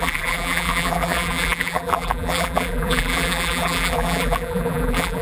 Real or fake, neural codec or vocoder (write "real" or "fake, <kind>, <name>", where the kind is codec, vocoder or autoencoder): fake, vocoder, BigVGAN v2